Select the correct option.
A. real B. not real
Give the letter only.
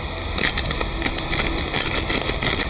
A